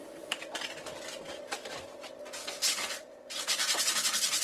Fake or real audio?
real